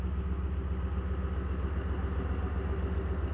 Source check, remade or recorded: recorded